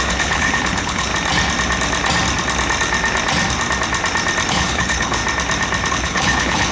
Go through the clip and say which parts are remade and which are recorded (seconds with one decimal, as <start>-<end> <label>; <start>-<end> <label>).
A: 0.0-1.1 remade; 1.1-4.5 recorded; 4.5-5.2 remade; 5.2-5.9 recorded; 5.9-6.7 remade